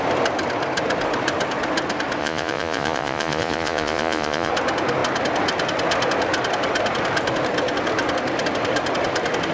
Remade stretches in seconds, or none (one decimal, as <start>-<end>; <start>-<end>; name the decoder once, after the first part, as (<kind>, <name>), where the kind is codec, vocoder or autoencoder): 2.2-4.5 (vocoder, Vocos)